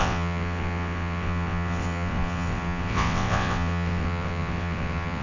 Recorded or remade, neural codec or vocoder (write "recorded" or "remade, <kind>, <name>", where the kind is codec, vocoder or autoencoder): remade, vocoder, WaveNeXt